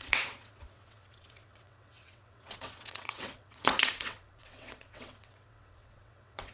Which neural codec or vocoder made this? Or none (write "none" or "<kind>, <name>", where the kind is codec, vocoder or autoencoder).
vocoder, WaveNeXt